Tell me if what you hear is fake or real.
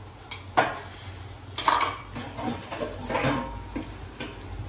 real